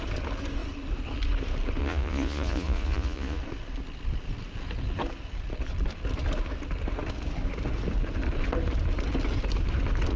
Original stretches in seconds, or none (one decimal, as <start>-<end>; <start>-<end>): 0.0-1.8; 3.4-10.2